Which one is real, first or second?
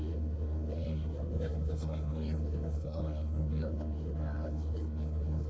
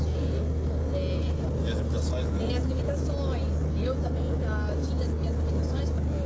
second